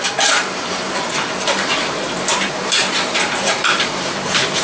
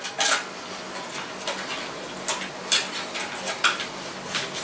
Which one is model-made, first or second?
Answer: first